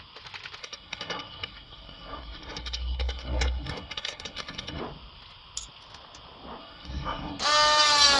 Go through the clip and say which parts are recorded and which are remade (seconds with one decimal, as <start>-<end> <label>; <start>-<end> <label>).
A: 0.0-0.6 recorded; 0.6-4.8 remade; 4.8-6.6 recorded; 6.6-7.4 remade; 7.4-8.2 recorded